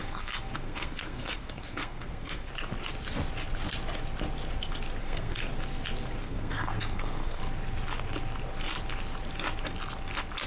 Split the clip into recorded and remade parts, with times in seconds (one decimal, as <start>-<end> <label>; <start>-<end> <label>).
0.0-2.5 remade; 2.5-5.0 recorded; 5.0-5.5 remade; 5.5-6.2 recorded; 6.2-7.4 remade; 7.4-10.5 recorded